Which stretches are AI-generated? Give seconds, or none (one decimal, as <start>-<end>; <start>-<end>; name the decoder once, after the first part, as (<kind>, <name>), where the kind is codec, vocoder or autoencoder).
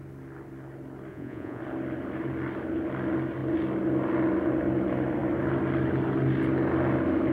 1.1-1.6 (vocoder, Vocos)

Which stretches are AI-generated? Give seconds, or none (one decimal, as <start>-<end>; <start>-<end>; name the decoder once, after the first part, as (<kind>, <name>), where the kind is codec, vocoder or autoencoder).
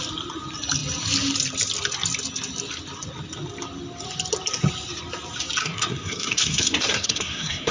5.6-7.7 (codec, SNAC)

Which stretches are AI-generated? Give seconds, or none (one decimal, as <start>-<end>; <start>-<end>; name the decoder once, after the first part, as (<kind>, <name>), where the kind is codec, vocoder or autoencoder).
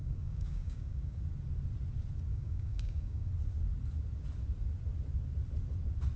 0.0-1.2 (codec, DAC); 2.3-3.3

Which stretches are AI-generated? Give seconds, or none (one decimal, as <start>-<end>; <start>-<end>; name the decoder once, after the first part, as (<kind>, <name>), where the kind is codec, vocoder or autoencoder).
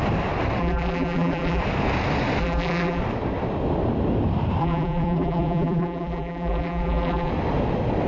0.6-1.6 (vocoder, BigVGAN v2); 2.4-3.0; 4.6-7.3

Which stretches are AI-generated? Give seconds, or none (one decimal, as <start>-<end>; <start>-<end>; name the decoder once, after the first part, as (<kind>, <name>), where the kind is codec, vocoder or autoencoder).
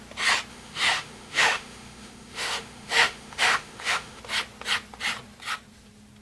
0.5-4.2 (autoencoder, DAC-VAE)